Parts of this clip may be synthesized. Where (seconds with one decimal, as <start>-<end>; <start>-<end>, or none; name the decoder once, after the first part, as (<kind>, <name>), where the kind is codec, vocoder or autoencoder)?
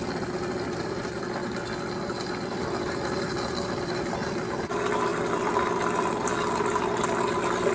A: none